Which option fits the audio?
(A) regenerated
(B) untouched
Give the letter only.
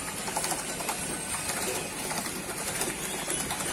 B